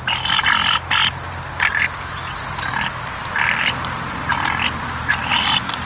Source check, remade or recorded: recorded